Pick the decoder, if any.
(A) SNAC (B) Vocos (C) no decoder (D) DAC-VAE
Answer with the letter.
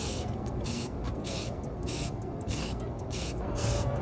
A